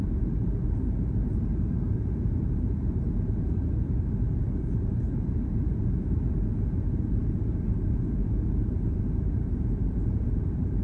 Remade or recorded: remade